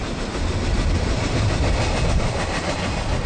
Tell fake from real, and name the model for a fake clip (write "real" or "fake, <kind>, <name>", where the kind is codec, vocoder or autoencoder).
fake, vocoder, BigVGAN v2